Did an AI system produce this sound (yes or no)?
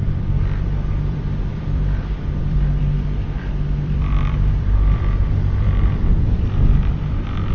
yes